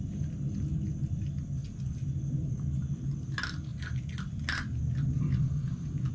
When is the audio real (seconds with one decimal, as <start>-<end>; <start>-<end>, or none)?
0.0-6.1